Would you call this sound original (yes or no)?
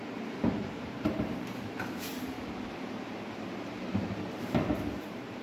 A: no